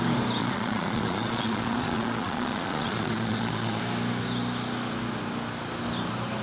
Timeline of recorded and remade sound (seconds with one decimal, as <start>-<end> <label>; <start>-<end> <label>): 0.0-0.4 recorded; 0.4-3.8 remade; 3.8-6.4 recorded

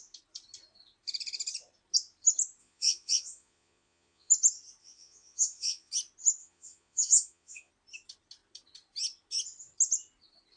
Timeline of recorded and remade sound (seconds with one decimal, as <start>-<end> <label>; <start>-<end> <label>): 0.0-2.6 recorded; 2.6-4.3 remade; 4.3-4.8 recorded; 4.8-5.9 remade; 5.9-6.4 recorded; 6.4-7.7 remade; 7.7-10.6 recorded

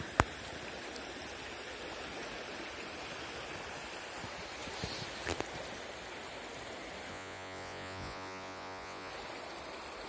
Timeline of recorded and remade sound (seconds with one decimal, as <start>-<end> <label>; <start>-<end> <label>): 0.0-7.1 recorded; 7.1-9.1 remade; 9.1-10.1 recorded

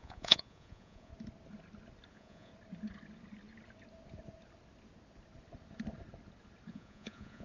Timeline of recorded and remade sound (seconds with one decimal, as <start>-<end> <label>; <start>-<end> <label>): 0.0-1.1 remade; 1.1-2.1 recorded; 2.1-2.5 remade; 2.5-6.7 recorded; 6.7-7.4 remade